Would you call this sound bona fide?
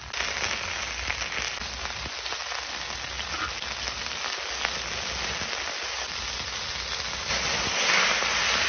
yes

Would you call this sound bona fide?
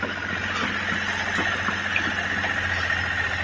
yes